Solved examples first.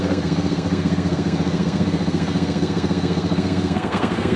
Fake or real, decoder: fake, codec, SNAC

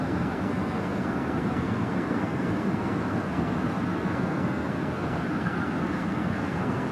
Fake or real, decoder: fake, codec, SNAC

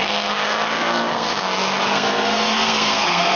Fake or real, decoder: fake, codec, SNAC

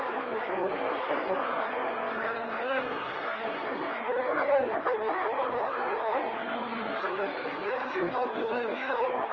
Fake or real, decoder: fake, codec, SNAC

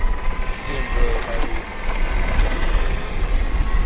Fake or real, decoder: real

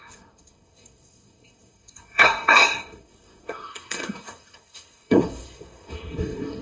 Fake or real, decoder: fake, codec, SNAC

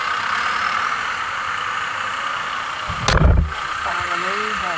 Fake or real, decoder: real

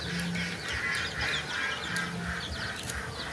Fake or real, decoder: real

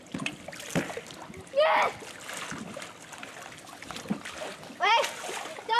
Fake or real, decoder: real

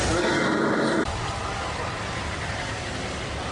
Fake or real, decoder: real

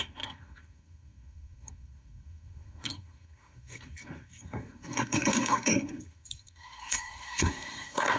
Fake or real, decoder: fake, codec, SNAC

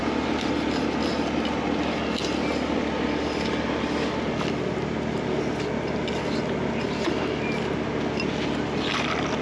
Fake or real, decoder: real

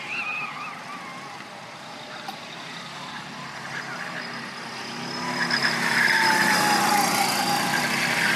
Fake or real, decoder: real